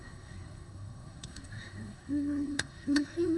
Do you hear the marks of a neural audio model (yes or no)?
yes